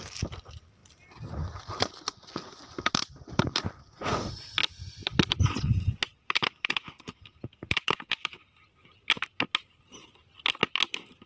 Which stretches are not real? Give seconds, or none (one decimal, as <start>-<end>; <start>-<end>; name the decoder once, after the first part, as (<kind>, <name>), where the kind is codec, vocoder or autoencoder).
none

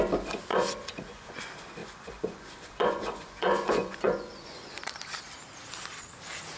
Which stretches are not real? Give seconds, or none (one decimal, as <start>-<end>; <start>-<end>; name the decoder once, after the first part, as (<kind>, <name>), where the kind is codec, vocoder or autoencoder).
0.5-1.4 (vocoder, Vocos); 1.8-4.8

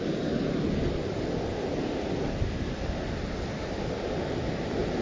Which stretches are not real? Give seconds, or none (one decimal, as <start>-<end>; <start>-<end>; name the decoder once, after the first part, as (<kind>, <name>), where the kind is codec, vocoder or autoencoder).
none

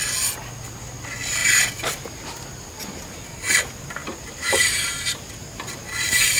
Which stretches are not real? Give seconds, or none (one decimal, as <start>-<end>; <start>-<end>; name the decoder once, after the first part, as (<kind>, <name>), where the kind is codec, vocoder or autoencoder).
4.0-6.4 (vocoder, BigVGAN v2)